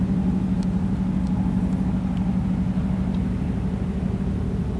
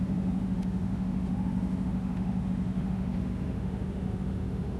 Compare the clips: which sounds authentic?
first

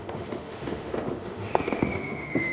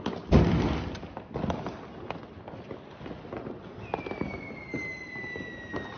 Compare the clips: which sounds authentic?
second